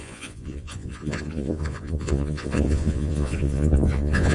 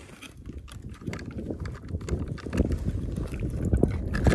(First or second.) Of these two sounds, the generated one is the first